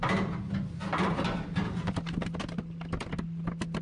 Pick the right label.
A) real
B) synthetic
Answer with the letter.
A